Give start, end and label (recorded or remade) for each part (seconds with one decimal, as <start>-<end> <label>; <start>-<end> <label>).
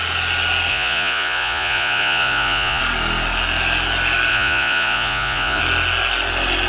0.0-0.7 recorded; 0.7-2.8 remade; 2.8-4.3 recorded; 4.3-5.6 remade; 5.6-6.7 recorded